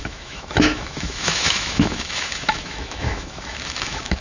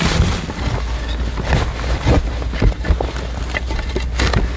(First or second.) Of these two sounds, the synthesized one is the first